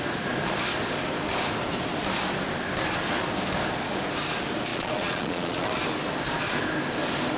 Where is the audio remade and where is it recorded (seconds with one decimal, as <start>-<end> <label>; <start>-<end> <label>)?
0.0-4.7 recorded; 4.7-5.8 remade; 5.8-7.4 recorded